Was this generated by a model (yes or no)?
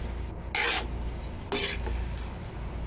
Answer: no